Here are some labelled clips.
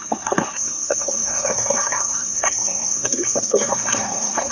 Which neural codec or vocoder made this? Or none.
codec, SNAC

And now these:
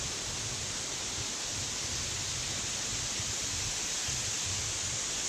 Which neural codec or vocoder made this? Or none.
none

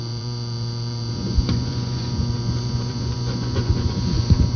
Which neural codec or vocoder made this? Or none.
vocoder, Vocos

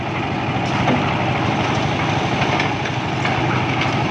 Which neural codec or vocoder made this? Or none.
none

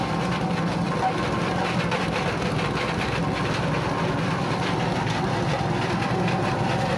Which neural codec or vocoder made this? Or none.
none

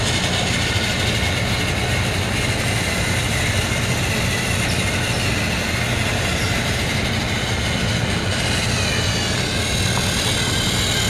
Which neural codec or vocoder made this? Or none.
none